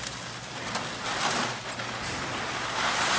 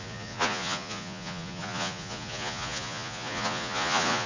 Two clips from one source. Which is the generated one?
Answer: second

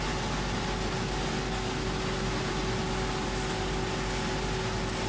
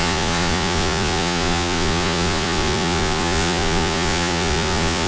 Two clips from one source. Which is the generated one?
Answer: second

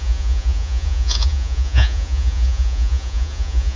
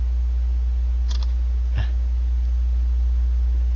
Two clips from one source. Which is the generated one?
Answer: first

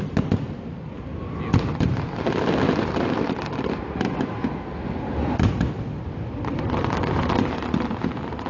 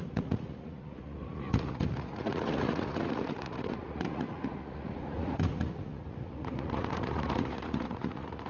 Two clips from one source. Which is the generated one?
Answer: second